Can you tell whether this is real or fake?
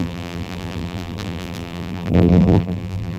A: fake